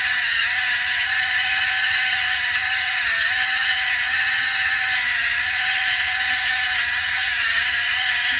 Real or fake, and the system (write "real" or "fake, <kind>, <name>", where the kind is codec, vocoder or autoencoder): fake, vocoder, HiFi-GAN